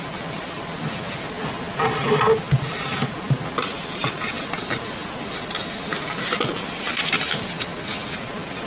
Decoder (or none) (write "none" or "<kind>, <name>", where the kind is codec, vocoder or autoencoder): none